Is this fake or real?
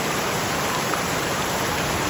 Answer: fake